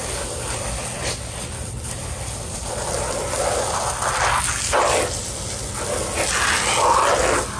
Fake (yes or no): no